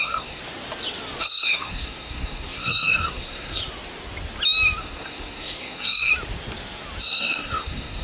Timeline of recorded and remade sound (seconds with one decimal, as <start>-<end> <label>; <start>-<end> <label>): 0.0-0.4 remade; 0.4-1.2 recorded; 1.2-3.6 remade; 3.6-4.8 recorded; 4.8-6.1 remade; 6.1-7.0 recorded; 7.0-8.0 remade